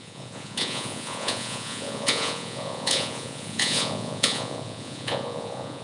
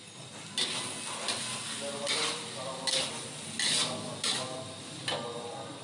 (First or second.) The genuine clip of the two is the second